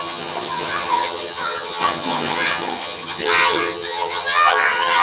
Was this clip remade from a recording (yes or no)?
yes